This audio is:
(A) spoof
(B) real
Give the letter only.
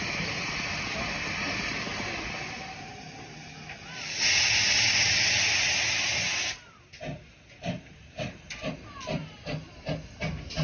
B